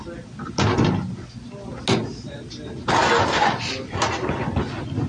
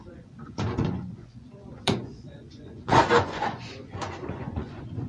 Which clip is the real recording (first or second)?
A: first